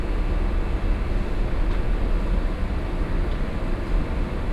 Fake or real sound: real